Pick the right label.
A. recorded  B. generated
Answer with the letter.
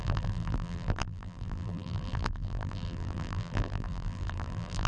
B